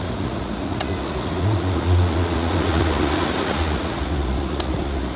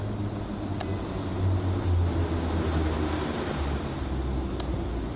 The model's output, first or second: first